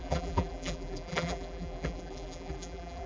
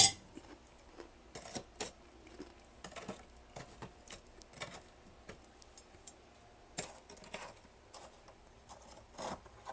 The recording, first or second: second